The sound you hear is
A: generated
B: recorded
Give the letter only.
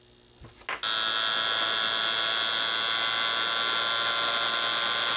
B